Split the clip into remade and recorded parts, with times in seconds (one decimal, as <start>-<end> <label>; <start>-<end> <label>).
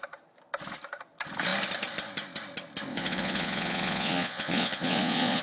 0.0-2.9 recorded; 2.9-5.4 remade